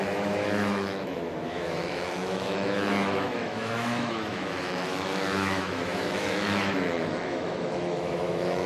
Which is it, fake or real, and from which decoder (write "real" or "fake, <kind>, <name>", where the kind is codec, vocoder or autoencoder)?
fake, autoencoder, DAC-VAE